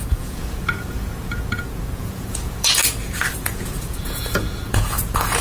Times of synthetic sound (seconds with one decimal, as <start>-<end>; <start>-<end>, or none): 0.0-2.8; 3.4-5.4